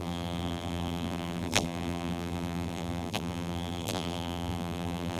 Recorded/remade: remade